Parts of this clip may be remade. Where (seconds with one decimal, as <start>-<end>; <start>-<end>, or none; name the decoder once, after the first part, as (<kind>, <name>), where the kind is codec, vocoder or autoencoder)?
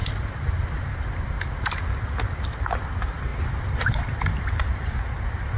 none